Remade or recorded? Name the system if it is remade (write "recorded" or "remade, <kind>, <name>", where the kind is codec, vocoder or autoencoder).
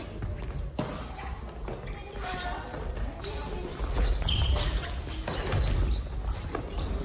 recorded